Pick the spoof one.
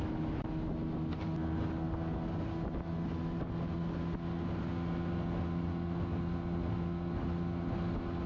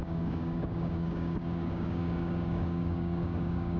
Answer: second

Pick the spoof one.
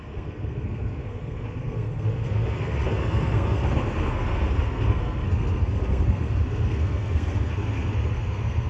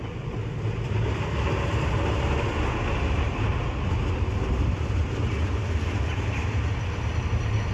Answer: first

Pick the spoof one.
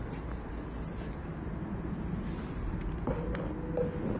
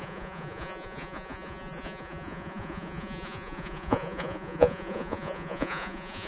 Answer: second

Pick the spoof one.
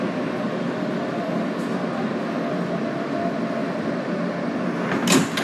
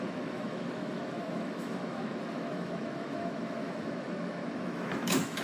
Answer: second